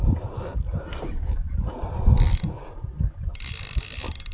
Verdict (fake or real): real